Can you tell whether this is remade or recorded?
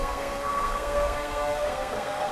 remade